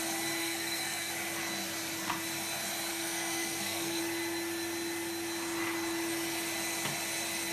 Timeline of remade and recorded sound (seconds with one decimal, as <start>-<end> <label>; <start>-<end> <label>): 0.0-0.4 recorded; 0.4-1.1 remade; 1.1-2.9 recorded; 2.9-4.0 remade; 4.0-7.5 recorded

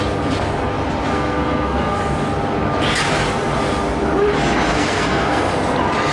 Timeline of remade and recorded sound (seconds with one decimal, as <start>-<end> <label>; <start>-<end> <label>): 0.0-1.1 recorded; 1.1-2.0 remade; 2.0-4.7 recorded; 4.7-5.5 remade; 5.5-6.1 recorded